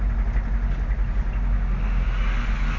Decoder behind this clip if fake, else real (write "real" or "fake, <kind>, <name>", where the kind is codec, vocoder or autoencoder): real